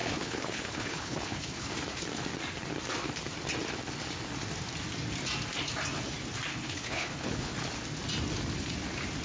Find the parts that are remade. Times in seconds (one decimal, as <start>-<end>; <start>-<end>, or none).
0.0-1.7; 6.5-7.5